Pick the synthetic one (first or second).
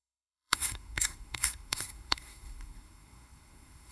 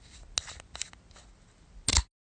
first